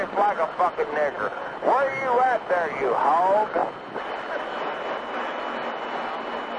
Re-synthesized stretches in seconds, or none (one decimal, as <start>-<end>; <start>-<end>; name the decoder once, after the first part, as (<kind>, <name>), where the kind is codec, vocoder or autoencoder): none